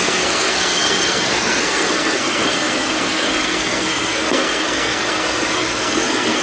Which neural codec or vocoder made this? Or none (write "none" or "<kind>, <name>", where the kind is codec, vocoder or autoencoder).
codec, SNAC